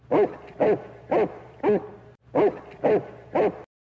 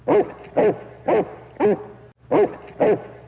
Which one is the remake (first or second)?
first